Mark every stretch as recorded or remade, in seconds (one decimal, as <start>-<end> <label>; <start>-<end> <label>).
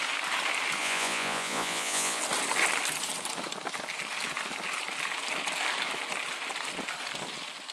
0.0-0.8 recorded; 0.8-2.2 remade; 2.2-7.7 recorded